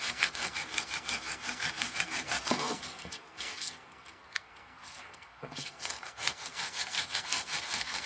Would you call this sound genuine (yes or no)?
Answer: no